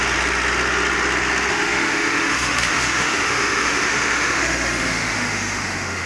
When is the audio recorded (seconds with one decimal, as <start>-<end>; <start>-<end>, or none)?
0.0-1.5